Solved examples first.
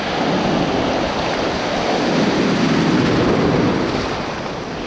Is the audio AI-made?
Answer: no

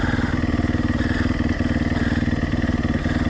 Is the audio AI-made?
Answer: no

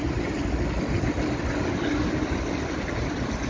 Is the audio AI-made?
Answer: no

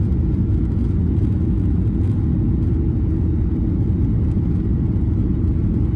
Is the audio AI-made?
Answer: no